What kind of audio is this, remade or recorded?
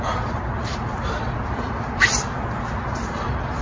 remade